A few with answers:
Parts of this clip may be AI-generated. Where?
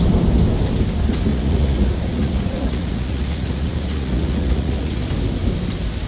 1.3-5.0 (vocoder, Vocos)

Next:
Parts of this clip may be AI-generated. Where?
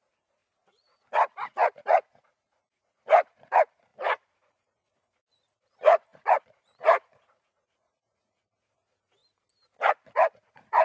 0.0-9.2 (vocoder, Vocos); 9.9-10.8